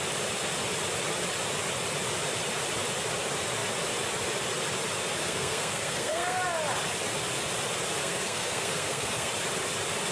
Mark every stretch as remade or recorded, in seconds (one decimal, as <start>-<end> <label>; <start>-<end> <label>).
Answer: 0.0-5.2 recorded; 5.2-6.4 remade; 6.4-8.0 recorded; 8.0-9.3 remade; 9.3-10.1 recorded